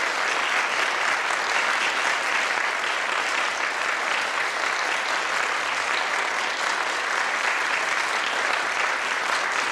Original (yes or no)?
yes